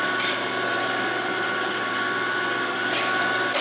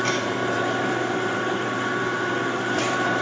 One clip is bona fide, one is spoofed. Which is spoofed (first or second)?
second